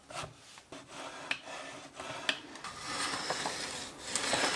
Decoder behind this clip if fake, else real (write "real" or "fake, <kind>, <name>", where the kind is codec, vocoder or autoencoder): real